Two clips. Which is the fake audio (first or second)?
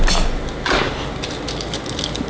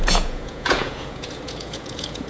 second